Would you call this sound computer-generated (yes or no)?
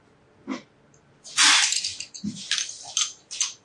no